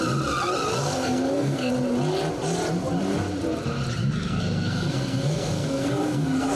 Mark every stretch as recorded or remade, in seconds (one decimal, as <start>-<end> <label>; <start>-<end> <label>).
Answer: 0.0-0.8 recorded; 0.8-1.7 remade; 1.7-4.0 recorded; 4.0-6.6 remade